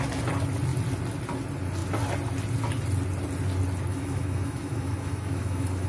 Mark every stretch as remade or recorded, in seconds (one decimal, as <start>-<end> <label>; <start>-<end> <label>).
0.0-3.9 recorded; 3.9-5.9 remade